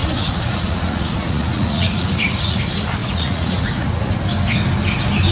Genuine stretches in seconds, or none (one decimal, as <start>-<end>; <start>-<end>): 2.6-3.0; 4.1-5.3